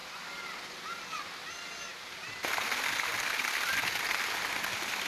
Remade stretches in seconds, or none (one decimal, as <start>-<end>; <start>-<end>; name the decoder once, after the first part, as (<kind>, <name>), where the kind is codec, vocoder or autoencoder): 0.0-1.5 (vocoder, BigVGAN v2)